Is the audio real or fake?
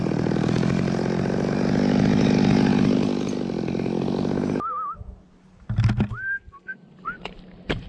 real